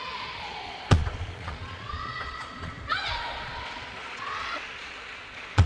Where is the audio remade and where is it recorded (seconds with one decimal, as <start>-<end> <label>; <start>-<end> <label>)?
0.0-5.7 remade